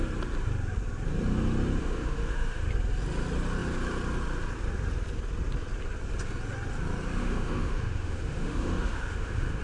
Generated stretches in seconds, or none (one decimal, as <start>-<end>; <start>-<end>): 1.8-2.7; 7.2-9.6

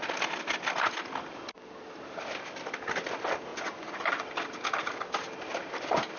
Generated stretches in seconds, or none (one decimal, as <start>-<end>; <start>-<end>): 3.5-4.2

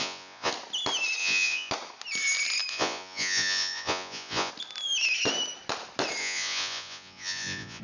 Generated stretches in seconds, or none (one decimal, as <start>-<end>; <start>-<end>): 0.0-0.5; 1.2-1.7; 2.7-4.5; 6.2-7.8

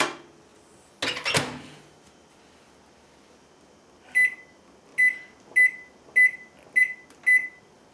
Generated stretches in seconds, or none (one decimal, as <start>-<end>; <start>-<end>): none